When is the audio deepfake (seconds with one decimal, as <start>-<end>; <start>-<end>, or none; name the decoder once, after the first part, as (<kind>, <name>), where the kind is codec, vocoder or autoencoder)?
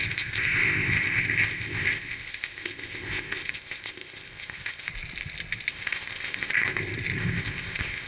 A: 0.0-4.9 (codec, ZipCodec); 5.7-6.8; 7.2-8.1